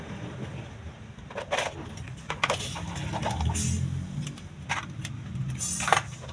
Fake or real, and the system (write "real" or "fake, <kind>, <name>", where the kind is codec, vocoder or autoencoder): real